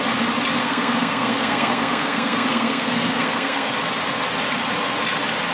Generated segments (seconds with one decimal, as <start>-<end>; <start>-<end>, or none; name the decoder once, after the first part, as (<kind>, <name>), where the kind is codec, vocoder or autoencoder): 0.6-3.7 (codec, SNAC)